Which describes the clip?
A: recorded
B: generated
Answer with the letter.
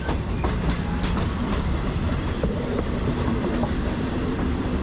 A